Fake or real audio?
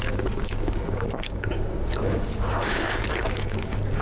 fake